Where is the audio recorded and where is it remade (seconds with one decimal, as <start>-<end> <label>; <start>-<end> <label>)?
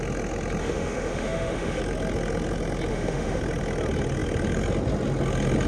0.0-0.6 recorded; 0.6-1.8 remade; 1.8-2.9 recorded; 2.9-3.4 remade; 3.4-5.7 recorded